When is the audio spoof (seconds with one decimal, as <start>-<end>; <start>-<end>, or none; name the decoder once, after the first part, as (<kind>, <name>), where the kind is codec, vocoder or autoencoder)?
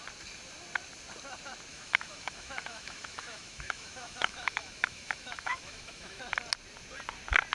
1.7-6.2 (autoencoder, DAC-VAE)